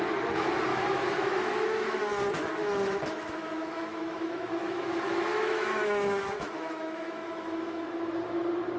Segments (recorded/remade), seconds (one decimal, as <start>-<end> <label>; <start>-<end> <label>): 0.0-0.7 recorded; 0.7-2.0 remade; 2.0-2.6 recorded; 2.6-7.9 remade; 7.9-8.8 recorded